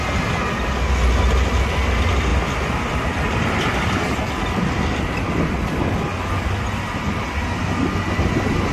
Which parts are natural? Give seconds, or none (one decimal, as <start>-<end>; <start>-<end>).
0.0-2.3; 4.4-8.7